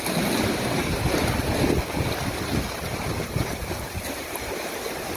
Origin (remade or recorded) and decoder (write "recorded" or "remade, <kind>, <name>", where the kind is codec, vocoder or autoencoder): recorded